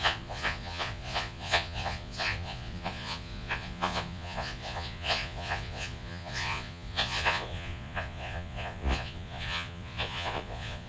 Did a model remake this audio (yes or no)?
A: yes